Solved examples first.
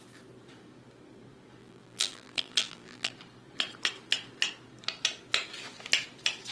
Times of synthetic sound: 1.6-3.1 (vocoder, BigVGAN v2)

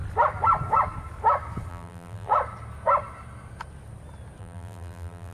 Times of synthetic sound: 1.7-2.3 (vocoder, BigVGAN v2); 4.4-5.3

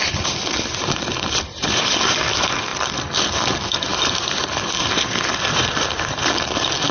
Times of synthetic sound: 2.7-3.3 (vocoder, BigVGAN v2); 3.9-6.3

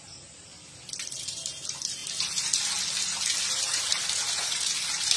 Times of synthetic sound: 0.0-0.5 (vocoder, BigVGAN v2); 1.3-2.0; 3.5-5.2

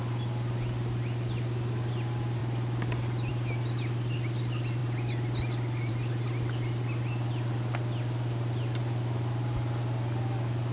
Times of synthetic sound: none

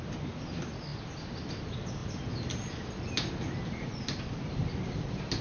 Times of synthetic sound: none